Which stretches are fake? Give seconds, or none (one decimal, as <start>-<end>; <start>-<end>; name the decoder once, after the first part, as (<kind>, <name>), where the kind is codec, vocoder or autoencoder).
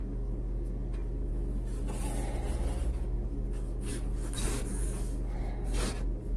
0.0-1.3 (codec, DAC); 2.9-6.4